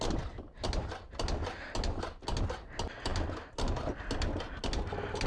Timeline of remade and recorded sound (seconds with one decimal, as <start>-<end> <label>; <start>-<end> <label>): 0.0-5.3 recorded